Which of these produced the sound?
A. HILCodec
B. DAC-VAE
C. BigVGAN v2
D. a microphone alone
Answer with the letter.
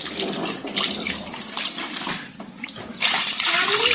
D